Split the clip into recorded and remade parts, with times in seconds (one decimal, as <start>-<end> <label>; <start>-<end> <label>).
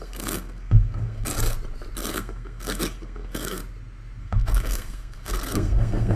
0.0-1.3 remade; 1.3-2.1 recorded; 2.1-3.6 remade; 3.6-4.2 recorded; 4.2-6.2 remade